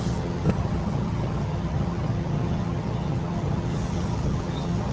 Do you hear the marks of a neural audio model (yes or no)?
yes